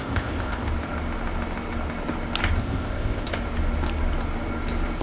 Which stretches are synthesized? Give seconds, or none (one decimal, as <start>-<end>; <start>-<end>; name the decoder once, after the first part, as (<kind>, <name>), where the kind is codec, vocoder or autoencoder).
0.0-0.7 (codec, ZipCodec); 2.6-3.3